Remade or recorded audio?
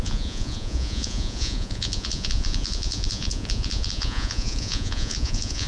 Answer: remade